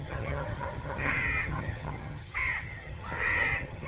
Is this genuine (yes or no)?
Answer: no